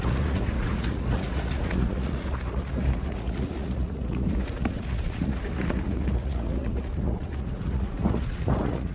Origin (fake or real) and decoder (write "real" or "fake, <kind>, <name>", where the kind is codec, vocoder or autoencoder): fake, vocoder, Vocos